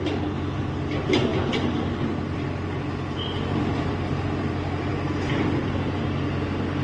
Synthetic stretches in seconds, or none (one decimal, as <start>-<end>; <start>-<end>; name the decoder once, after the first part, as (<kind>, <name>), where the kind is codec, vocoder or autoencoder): none